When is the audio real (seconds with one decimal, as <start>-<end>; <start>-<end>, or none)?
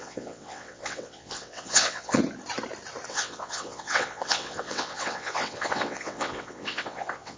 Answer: 2.2-3.1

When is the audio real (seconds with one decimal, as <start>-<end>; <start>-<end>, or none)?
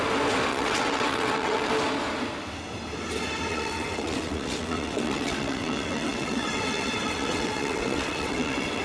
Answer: 0.0-0.5; 1.7-3.5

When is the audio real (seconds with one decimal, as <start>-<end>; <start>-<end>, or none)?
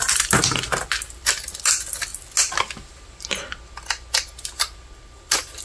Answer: 0.0-5.6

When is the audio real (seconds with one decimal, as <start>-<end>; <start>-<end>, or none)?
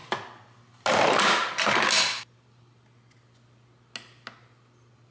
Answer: 0.0-5.1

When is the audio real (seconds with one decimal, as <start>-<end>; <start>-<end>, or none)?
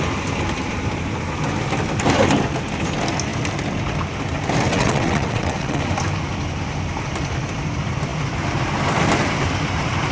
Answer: 0.0-4.7; 5.8-10.1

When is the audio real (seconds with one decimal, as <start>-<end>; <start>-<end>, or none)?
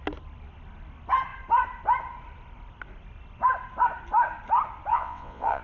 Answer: 0.0-4.9